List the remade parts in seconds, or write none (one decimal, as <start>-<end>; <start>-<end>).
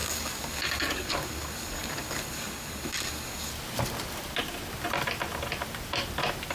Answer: 0.0-3.5